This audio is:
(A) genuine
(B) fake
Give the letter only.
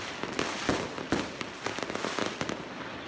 A